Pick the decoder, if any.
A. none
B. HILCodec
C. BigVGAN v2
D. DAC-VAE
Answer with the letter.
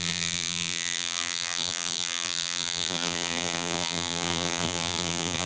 C